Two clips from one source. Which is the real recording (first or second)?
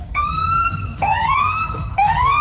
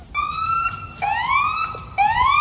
second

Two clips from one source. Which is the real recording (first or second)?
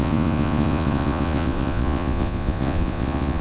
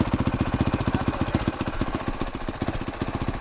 second